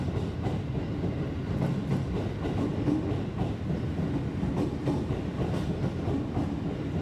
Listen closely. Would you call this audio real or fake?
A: real